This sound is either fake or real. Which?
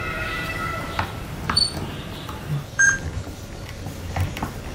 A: fake